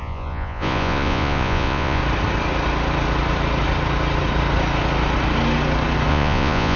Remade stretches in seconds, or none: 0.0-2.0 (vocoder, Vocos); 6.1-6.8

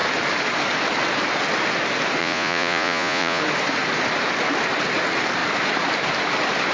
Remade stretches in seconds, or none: 2.2-3.4 (vocoder, Vocos)

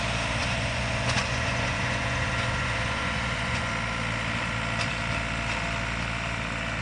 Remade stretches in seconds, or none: 0.4-3.7 (vocoder, Vocos)

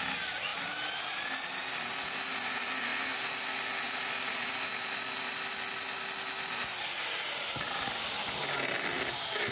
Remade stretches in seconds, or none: none

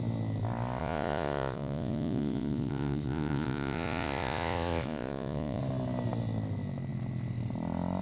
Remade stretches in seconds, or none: 0.8-5.6 (vocoder, Vocos)

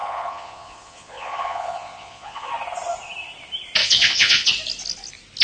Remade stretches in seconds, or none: 0.0-2.5 (vocoder, Vocos); 3.8-4.5